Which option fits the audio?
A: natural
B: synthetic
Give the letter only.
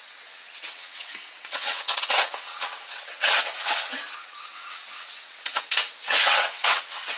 B